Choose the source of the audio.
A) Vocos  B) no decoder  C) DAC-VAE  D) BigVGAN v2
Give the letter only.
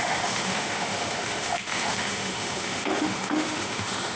C